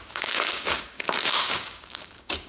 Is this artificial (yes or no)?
yes